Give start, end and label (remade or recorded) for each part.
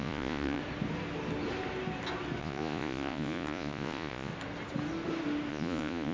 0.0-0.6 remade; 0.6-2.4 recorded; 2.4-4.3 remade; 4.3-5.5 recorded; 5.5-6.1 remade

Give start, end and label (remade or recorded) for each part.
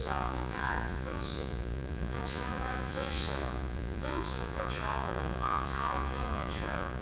0.0-7.0 remade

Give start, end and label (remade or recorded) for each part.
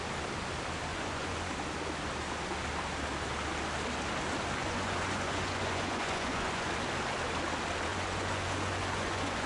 0.0-0.9 recorded; 0.9-1.5 remade; 1.5-4.6 recorded; 4.6-6.7 remade; 6.7-7.9 recorded; 7.9-9.5 remade